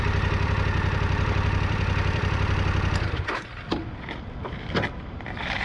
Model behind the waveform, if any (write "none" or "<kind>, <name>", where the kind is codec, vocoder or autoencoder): vocoder, BigVGAN v2